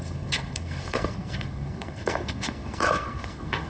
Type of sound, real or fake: fake